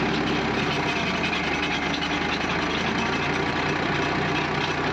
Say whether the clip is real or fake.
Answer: real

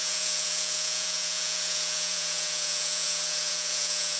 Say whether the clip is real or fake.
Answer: fake